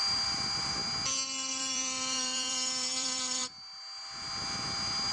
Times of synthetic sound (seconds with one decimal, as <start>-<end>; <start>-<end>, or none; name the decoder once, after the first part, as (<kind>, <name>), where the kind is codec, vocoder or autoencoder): 0.0-0.8 (vocoder, BigVGAN v2); 1.5-3.4